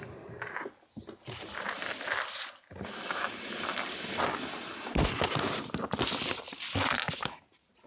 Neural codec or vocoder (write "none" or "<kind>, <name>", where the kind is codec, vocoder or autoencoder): none